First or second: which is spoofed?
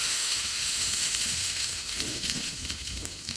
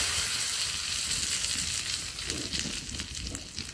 first